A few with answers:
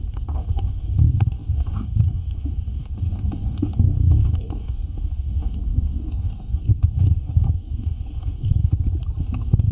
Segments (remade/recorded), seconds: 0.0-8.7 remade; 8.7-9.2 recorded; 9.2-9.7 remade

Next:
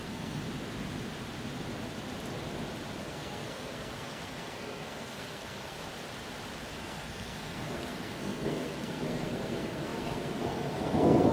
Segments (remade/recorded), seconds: 0.0-0.4 remade; 0.4-3.0 recorded; 3.0-5.9 remade; 5.9-6.8 recorded; 6.8-11.3 remade

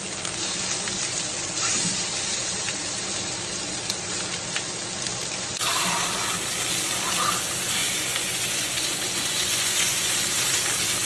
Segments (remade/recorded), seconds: 0.0-7.8 recorded; 7.8-10.2 remade; 10.2-11.1 recorded

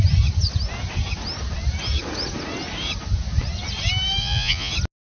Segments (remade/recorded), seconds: 0.0-4.2 recorded; 4.2-4.7 remade; 4.7-5.2 recorded